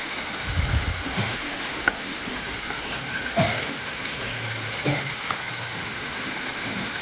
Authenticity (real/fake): fake